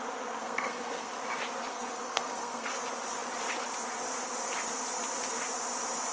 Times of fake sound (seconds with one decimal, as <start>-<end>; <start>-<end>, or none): 0.4-1.1; 1.7-2.7